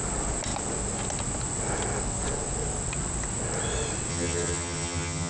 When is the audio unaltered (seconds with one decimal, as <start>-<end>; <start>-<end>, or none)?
0.0-4.1